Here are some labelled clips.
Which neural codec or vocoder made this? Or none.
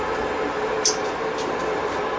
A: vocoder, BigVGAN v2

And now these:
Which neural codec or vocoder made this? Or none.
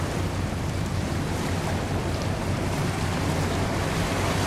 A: vocoder, BigVGAN v2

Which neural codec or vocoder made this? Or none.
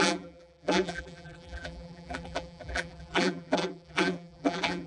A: vocoder, BigVGAN v2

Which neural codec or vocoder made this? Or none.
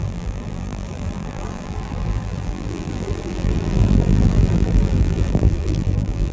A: vocoder, BigVGAN v2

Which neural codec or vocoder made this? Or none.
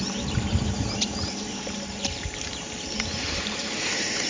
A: vocoder, BigVGAN v2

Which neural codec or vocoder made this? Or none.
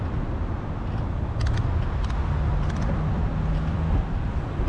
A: none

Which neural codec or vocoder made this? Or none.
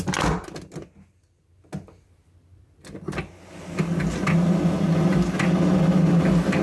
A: none